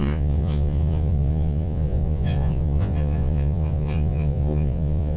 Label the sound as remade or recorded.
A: remade